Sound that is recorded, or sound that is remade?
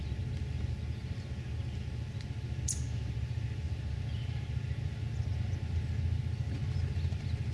recorded